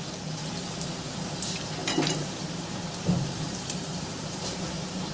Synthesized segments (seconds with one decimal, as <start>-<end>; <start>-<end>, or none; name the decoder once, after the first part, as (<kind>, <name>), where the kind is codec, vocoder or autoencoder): 1.8-5.1 (vocoder, BigVGAN v2)